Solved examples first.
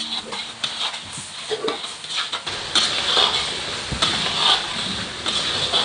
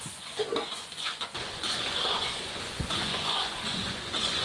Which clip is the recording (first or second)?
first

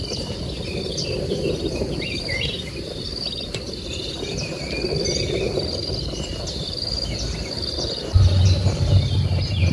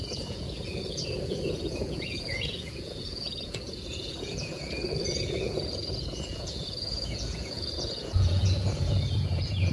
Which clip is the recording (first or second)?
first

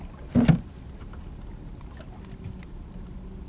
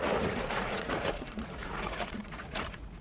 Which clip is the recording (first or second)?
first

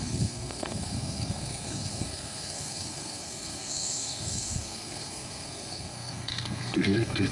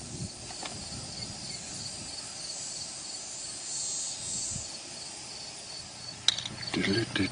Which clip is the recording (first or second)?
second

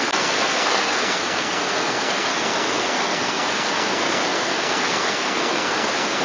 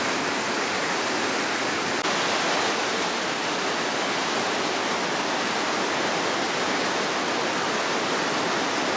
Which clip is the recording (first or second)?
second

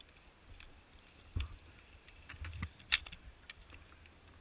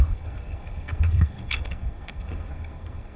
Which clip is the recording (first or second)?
first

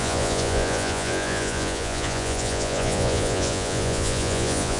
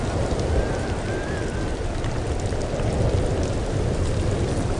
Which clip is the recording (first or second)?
second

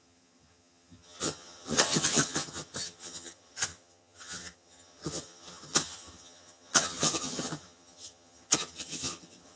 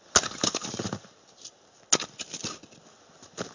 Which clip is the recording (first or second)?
second